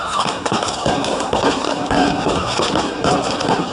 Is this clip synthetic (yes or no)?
yes